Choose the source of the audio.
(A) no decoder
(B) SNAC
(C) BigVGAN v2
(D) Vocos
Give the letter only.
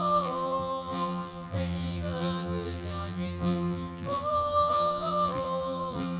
C